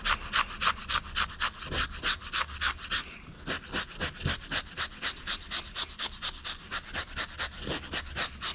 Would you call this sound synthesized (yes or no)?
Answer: no